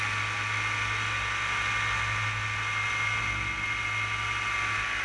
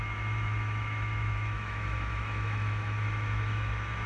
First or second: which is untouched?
first